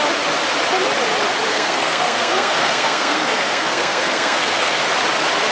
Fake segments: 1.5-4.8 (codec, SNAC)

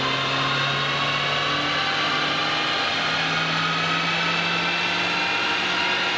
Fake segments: none

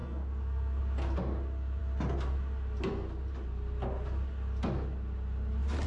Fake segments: 0.0-0.8 (codec, SNAC)

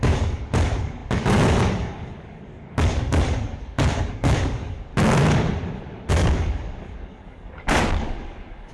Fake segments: 0.0-4.9 (codec, DAC); 6.1-8.7